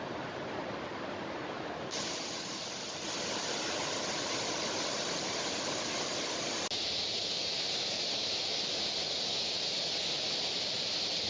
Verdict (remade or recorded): recorded